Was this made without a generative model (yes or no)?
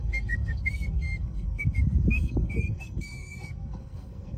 no